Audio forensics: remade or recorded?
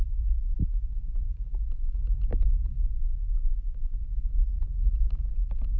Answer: recorded